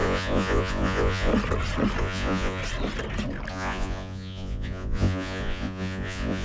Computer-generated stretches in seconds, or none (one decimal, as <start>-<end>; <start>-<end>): 0.0-1.3; 2.0-2.6; 3.5-6.4